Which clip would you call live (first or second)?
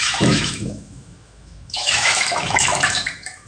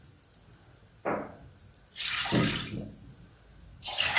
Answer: second